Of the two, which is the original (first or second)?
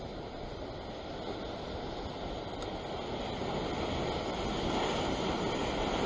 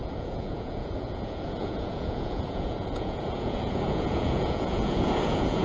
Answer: first